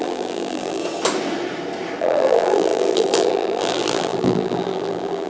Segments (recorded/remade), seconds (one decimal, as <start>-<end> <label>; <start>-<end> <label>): 0.0-0.8 remade; 0.8-2.0 recorded; 2.0-5.3 remade